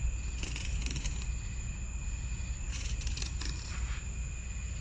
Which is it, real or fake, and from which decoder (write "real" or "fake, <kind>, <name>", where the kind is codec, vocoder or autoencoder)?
real